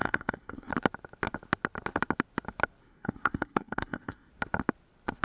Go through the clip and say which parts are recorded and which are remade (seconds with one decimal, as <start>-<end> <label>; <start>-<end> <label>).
0.0-0.7 remade; 0.7-2.8 recorded; 2.8-4.3 remade; 4.3-5.2 recorded